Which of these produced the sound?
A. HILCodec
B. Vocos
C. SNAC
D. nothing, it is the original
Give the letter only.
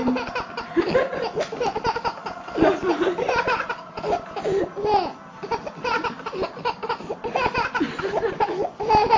D